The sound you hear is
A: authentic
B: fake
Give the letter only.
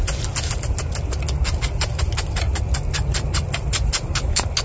A